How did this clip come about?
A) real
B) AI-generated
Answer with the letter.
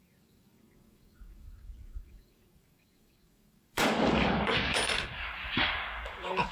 B